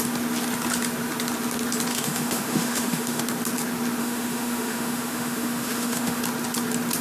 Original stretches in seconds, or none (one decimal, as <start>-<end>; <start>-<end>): 0.0-1.9; 3.2-4.0; 6.2-7.0